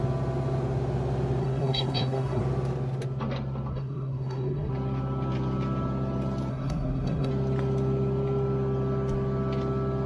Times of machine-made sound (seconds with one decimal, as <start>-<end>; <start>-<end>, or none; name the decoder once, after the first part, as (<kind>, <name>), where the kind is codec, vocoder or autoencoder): 1.4-2.4 (codec, SNAC); 3.7-4.7; 6.5-7.3